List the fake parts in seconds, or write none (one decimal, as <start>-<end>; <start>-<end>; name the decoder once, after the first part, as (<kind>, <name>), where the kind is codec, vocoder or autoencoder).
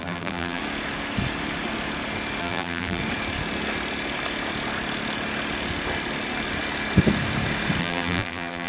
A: 0.0-0.6 (vocoder, BigVGAN v2); 2.4-3.0; 7.8-8.7